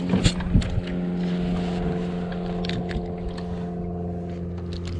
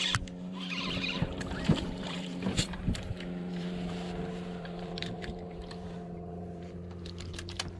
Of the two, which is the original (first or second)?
first